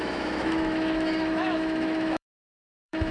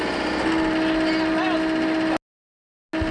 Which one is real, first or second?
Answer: second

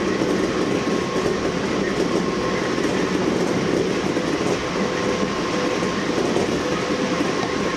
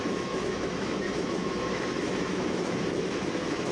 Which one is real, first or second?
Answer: first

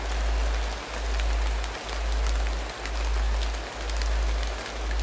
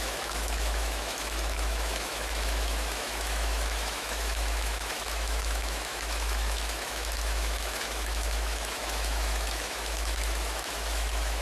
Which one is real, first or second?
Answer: first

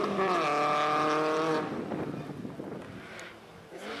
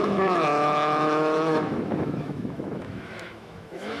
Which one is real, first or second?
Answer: first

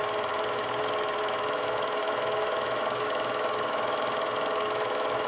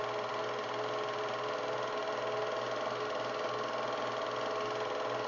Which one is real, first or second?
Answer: second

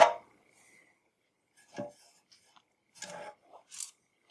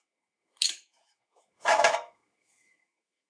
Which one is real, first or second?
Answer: first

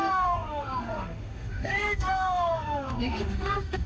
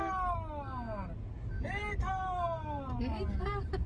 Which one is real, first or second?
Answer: second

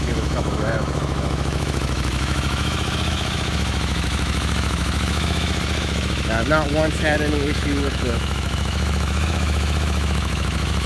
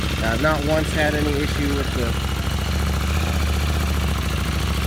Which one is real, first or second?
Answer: second